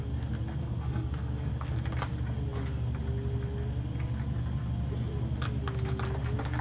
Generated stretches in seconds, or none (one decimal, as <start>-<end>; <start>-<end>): 0.6-1.5